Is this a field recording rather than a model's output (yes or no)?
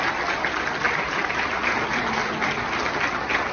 yes